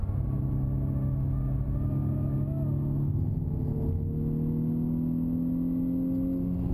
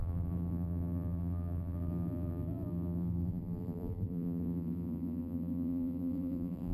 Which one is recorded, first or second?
first